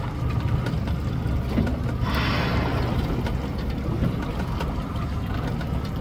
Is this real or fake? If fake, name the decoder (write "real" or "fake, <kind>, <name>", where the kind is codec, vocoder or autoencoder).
real